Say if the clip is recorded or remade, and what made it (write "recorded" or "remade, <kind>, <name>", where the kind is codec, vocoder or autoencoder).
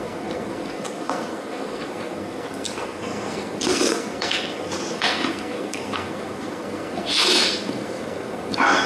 remade, codec, SNAC